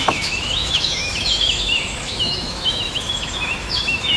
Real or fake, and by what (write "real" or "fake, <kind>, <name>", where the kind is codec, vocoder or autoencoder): fake, autoencoder, DAC-VAE